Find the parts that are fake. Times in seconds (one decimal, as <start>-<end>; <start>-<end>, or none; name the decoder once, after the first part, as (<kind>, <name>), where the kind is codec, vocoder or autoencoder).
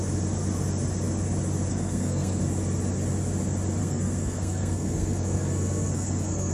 1.7-2.4 (codec, SNAC); 3.8-6.5